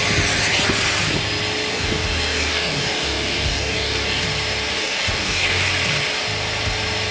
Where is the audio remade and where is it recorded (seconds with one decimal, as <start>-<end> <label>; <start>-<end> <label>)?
0.0-1.7 recorded; 1.7-4.2 remade; 4.2-4.7 recorded; 4.7-5.7 remade; 5.7-7.1 recorded